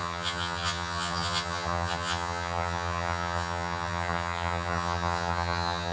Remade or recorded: remade